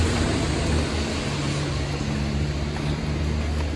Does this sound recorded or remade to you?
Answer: recorded